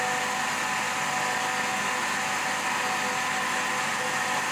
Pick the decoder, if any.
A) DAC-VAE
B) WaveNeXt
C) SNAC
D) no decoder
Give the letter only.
D